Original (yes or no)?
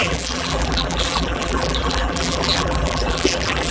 no